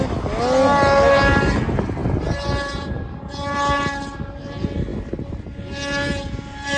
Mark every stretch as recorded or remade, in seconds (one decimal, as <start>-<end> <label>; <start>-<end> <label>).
0.0-6.8 recorded